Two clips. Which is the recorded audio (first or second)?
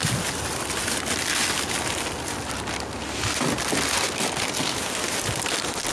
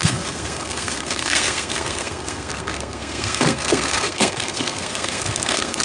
first